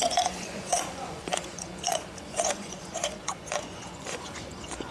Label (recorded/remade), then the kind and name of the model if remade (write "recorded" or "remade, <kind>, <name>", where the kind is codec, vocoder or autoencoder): remade, vocoder, Vocos